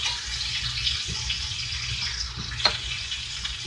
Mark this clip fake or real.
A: fake